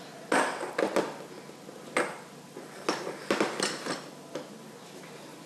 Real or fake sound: real